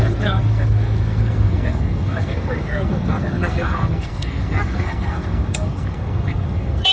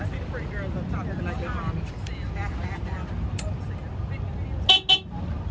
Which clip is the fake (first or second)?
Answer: first